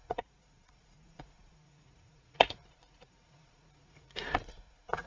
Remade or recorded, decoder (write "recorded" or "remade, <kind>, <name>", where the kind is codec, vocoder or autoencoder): remade, vocoder, Vocos